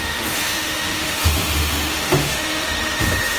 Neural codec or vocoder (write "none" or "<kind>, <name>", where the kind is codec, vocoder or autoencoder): autoencoder, DAC-VAE